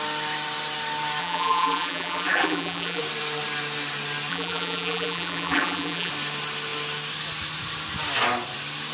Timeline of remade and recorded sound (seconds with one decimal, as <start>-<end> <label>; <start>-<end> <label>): 0.0-1.2 recorded; 1.2-3.0 remade; 3.0-4.3 recorded; 4.3-6.1 remade; 6.1-8.9 recorded